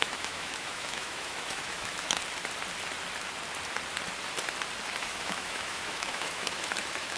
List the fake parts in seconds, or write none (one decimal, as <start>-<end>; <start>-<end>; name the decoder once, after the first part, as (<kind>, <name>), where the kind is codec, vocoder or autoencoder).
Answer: 0.0-2.2 (autoencoder, DAC-VAE); 5.0-7.2